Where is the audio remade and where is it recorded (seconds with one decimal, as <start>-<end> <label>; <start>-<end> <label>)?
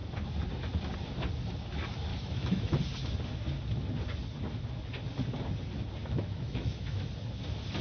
0.0-2.1 recorded; 2.1-2.8 remade; 2.8-6.0 recorded; 6.0-7.0 remade; 7.0-7.8 recorded